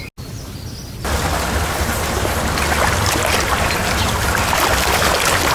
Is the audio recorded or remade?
recorded